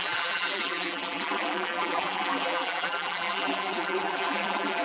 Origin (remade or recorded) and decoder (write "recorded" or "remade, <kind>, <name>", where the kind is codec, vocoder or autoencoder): remade, vocoder, BigVGAN v2